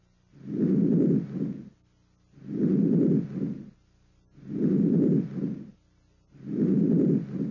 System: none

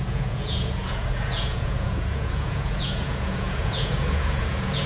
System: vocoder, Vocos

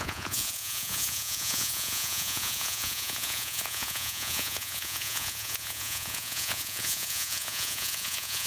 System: vocoder, Vocos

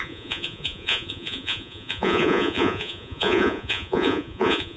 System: vocoder, Vocos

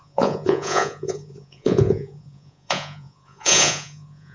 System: vocoder, Vocos